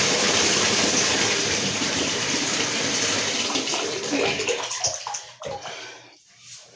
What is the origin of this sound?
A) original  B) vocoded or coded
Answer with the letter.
B